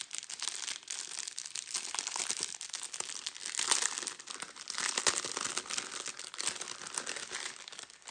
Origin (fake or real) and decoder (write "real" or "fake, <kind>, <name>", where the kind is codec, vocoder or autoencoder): real